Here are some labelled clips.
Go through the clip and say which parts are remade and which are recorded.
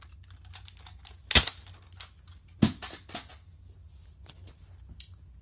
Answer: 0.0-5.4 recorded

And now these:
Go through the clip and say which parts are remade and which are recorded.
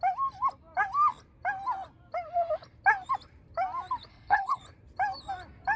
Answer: 0.0-4.1 recorded; 4.1-4.6 remade; 4.6-5.8 recorded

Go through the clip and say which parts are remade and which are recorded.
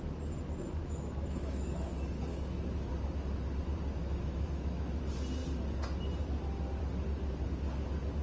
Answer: 0.0-0.8 recorded; 0.8-1.9 remade; 1.9-2.3 recorded; 2.3-2.9 remade; 2.9-4.0 recorded; 4.0-5.0 remade; 5.0-8.2 recorded